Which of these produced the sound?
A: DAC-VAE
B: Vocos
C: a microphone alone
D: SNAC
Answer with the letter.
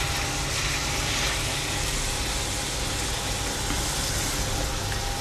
C